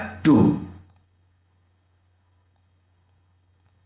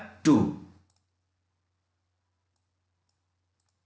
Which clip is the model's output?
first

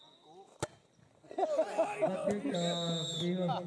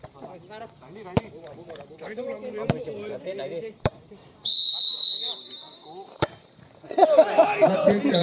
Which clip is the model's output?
second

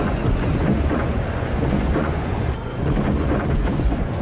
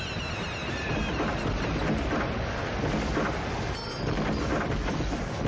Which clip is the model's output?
first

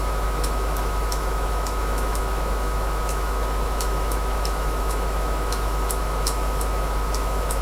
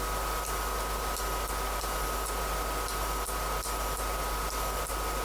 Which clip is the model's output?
first